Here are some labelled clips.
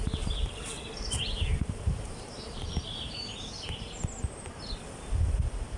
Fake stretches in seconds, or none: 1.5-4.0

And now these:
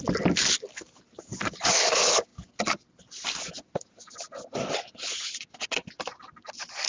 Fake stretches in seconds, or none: none

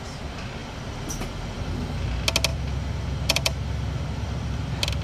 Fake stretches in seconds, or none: 0.6-1.7; 2.5-4.6